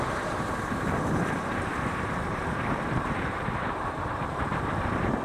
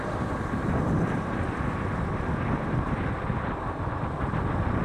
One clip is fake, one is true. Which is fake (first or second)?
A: first